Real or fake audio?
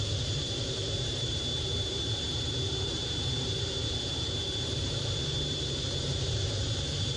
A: fake